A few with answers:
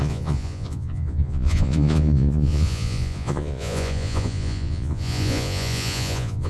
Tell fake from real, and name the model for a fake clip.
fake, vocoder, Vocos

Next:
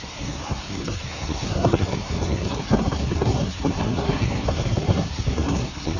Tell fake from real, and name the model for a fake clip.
fake, codec, SNAC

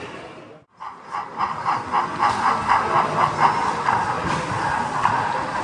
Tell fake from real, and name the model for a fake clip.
real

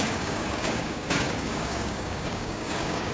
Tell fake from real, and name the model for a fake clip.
fake, codec, DAC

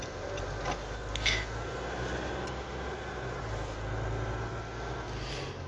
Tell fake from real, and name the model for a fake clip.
real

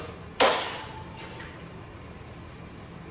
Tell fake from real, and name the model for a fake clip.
real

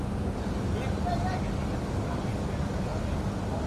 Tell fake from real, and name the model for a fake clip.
real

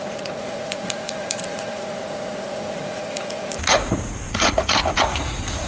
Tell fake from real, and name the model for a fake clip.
fake, vocoder, Vocos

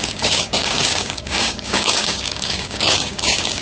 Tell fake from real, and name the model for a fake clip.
fake, codec, DAC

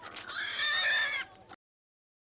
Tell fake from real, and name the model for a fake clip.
real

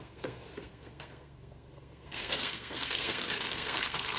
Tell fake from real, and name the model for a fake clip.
fake, codec, SNAC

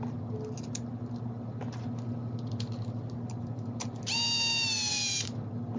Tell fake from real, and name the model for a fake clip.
real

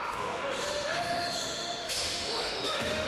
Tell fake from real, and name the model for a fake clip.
fake, autoencoder, DAC-VAE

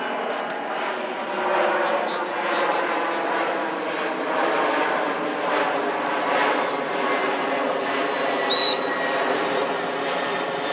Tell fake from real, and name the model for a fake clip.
real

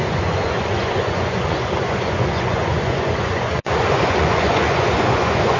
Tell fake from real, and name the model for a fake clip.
fake, vocoder, Vocos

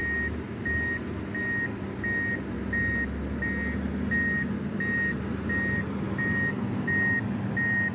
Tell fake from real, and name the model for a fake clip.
real